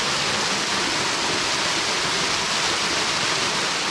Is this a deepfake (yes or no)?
no